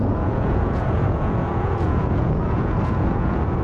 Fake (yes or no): yes